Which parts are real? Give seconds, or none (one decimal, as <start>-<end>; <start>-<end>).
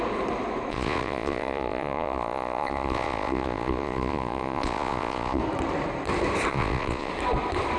0.0-0.7; 5.4-6.5; 7.1-7.8